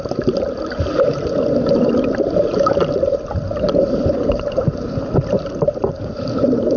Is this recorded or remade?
remade